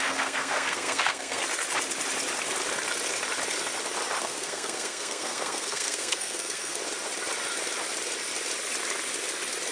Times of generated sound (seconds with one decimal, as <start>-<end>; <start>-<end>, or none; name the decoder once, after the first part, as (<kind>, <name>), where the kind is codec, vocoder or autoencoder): 0.0-1.4 (codec, SNAC); 4.2-6.8